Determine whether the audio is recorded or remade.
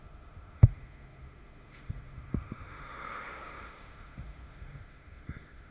remade